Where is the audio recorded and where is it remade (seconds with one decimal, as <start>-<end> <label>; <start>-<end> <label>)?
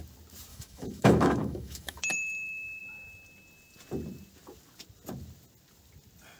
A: 0.0-0.5 recorded; 0.5-2.0 remade; 2.0-6.4 recorded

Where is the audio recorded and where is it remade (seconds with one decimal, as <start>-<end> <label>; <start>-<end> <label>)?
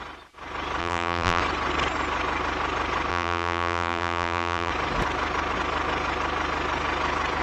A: 0.0-0.8 recorded; 0.8-1.4 remade; 1.4-3.1 recorded; 3.1-4.7 remade; 4.7-7.4 recorded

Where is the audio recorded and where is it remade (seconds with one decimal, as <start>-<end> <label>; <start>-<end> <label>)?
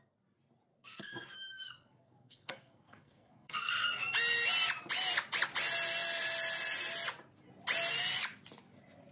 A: 0.0-0.7 recorded; 0.7-3.7 remade; 3.7-9.1 recorded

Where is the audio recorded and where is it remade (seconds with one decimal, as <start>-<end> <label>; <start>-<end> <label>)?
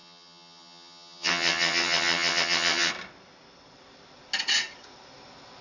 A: 0.0-2.9 remade; 2.9-5.6 recorded